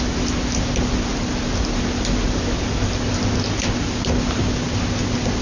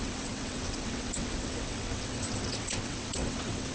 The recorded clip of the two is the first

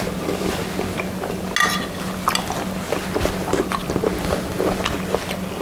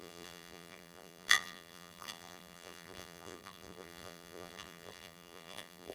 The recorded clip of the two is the first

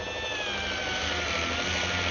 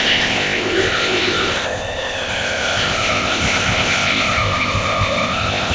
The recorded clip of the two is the first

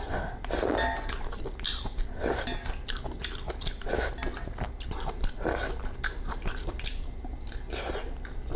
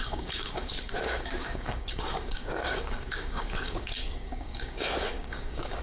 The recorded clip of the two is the first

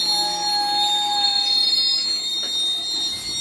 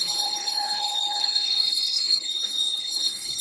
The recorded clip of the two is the first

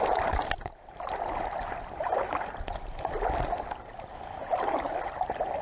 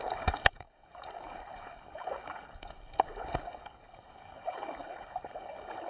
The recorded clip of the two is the first